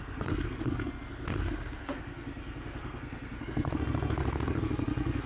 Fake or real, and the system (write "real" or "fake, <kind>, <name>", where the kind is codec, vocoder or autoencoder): fake, codec, SNAC